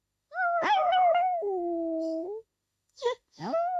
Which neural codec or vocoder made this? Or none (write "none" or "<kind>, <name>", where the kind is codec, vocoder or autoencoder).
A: autoencoder, DAC-VAE